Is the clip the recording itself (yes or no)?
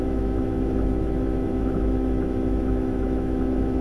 no